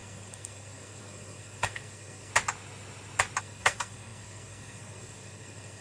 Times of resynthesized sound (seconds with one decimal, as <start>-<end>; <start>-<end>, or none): 0.0-2.3; 3.4-5.8